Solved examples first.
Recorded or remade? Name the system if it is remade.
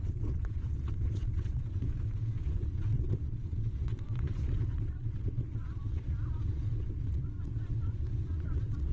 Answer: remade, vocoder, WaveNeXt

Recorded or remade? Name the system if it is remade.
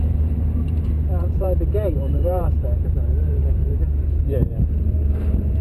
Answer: remade, vocoder, BigVGAN v2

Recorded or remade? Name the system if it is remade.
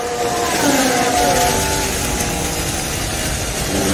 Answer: recorded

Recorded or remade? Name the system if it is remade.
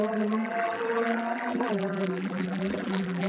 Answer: remade, vocoder, BigVGAN v2